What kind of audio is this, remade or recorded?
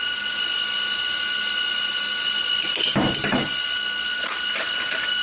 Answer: recorded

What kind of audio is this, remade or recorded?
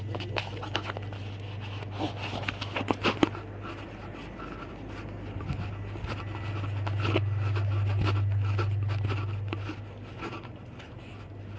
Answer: recorded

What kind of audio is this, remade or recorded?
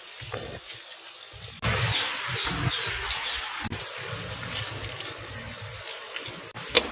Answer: recorded